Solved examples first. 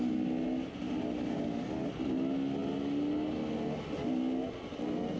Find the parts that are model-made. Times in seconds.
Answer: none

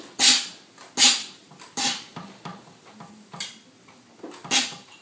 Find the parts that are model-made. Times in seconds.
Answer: none

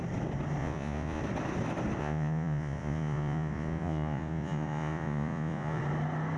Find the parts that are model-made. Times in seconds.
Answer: 0.6-1.2 (vocoder, Vocos); 2.0-5.8

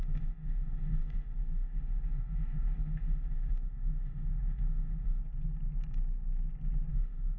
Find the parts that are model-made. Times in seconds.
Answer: 0.0-5.2 (autoencoder, DAC-VAE); 6.9-7.4

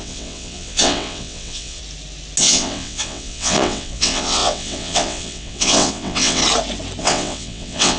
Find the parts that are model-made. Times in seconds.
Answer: 0.0-1.8 (vocoder, WaveNeXt); 2.4-6.4; 7.0-8.0

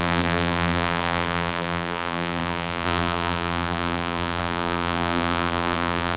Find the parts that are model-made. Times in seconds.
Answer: 0.0-6.2 (vocoder, BigVGAN v2)